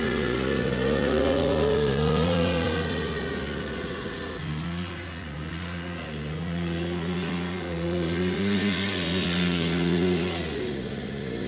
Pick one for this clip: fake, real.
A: fake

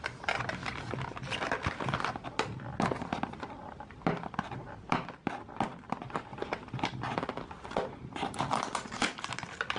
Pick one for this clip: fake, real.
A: real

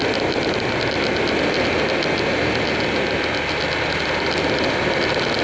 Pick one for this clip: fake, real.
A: real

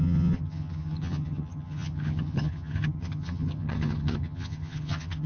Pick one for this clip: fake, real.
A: fake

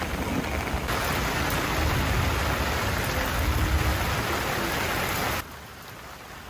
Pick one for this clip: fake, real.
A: real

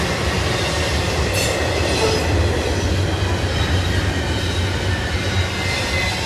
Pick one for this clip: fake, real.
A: real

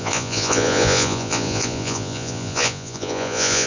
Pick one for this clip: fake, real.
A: fake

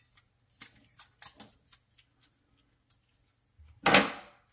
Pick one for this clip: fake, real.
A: real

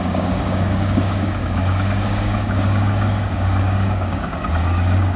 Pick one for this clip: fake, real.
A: fake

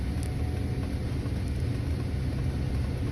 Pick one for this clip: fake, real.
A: real